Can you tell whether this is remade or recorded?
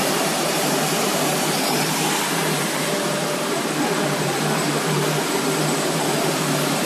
remade